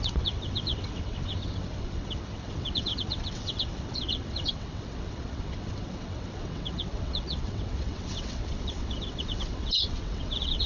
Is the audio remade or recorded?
remade